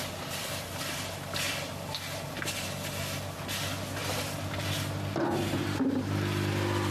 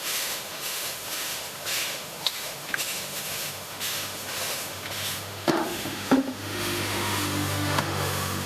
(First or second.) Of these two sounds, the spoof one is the second